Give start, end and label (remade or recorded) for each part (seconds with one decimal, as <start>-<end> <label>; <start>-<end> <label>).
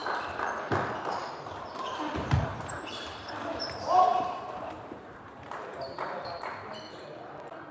0.0-0.7 remade; 0.7-2.5 recorded; 2.5-7.0 remade; 7.0-7.7 recorded